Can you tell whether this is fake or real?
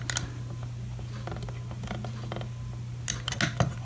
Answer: real